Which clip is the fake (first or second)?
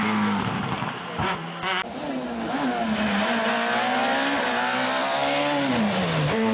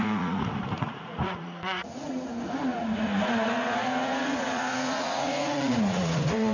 second